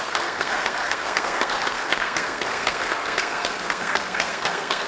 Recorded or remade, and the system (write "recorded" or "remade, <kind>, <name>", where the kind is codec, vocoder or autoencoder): remade, codec, SNAC